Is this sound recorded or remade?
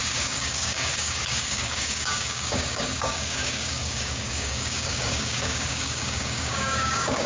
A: remade